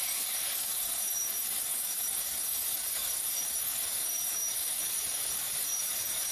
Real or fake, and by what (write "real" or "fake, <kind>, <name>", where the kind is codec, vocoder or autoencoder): fake, codec, DAC